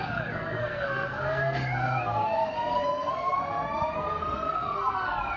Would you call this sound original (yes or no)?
no